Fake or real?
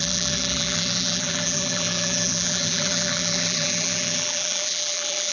fake